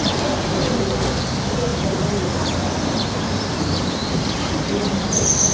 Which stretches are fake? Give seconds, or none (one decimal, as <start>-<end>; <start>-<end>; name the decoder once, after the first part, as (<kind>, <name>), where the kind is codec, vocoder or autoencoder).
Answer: 0.0-5.5 (vocoder, BigVGAN v2)